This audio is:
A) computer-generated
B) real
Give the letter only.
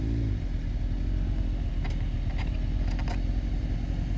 B